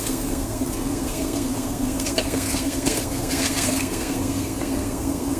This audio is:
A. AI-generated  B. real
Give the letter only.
A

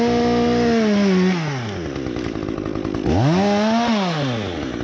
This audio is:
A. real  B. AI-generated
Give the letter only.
A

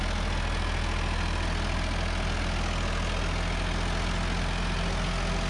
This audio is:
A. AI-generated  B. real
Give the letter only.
B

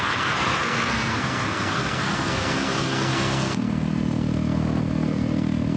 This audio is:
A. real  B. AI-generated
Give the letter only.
B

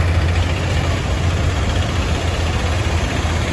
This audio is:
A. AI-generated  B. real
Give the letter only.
B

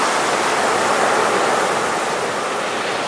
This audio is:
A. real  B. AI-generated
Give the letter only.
A